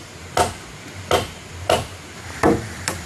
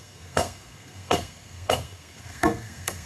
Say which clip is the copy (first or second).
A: second